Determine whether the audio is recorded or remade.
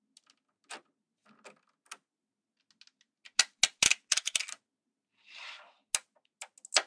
recorded